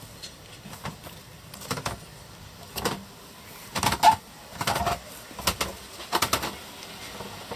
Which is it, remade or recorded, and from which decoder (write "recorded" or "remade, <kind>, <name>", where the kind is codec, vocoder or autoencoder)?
recorded